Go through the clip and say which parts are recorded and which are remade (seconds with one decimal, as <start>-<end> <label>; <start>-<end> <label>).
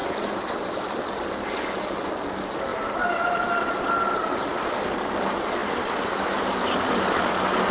0.0-2.7 recorded; 2.7-3.5 remade; 3.5-5.6 recorded; 5.6-6.6 remade; 6.6-7.7 recorded